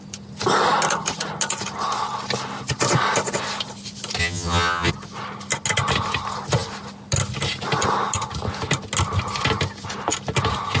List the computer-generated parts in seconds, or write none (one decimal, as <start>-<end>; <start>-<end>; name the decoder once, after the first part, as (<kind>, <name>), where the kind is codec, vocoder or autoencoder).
4.2-4.9 (vocoder, HiFi-GAN)